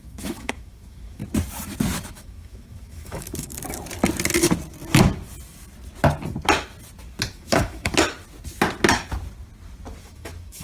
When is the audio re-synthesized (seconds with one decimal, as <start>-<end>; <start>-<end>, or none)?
0.0-1.2; 2.1-3.5; 7.3-7.9; 10.0-10.6